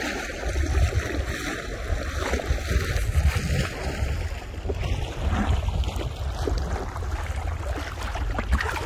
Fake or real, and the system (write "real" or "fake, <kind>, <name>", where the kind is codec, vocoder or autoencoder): real